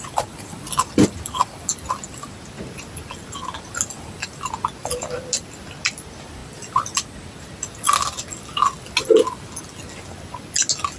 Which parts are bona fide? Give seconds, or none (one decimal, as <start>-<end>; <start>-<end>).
0.0-11.0